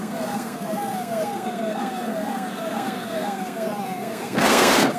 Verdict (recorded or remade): remade